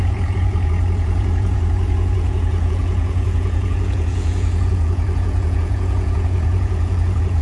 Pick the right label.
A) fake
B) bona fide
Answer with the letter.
A